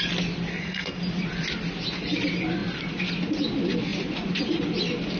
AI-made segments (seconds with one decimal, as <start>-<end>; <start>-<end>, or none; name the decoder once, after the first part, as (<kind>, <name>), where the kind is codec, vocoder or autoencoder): 0.5-1.0 (codec, SNAC)

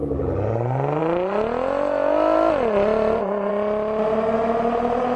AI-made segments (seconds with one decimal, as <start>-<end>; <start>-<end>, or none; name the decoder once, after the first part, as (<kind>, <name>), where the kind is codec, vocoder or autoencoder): none

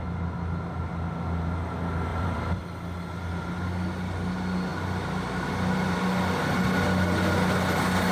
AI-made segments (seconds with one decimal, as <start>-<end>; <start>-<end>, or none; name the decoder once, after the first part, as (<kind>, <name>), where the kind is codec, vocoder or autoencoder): 2.1-2.6 (vocoder, BigVGAN v2)

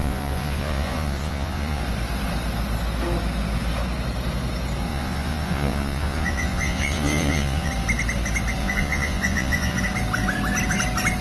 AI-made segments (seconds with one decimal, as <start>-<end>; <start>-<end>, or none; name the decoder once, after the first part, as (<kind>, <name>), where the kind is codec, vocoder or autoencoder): 0.0-1.8 (vocoder, Vocos); 4.9-7.7; 8.6-9.8

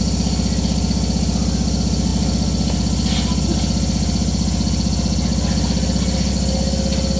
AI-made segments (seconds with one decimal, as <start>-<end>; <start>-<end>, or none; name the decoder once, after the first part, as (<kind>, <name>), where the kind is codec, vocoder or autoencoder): none